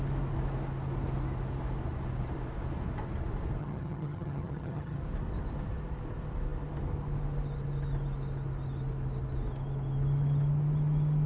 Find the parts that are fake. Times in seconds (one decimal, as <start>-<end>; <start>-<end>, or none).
3.6-5.0